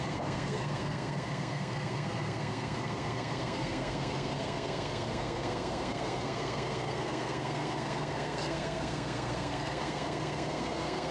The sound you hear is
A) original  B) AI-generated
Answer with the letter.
B